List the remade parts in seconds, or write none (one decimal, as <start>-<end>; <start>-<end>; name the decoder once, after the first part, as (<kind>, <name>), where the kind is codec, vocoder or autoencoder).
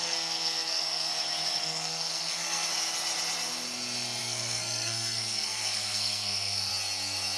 0.0-1.1 (codec, SNAC); 1.6-2.7; 4.2-6.7